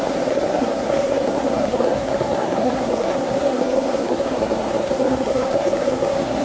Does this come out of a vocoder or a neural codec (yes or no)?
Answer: yes